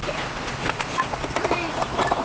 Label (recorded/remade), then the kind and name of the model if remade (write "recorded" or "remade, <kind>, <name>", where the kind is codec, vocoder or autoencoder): recorded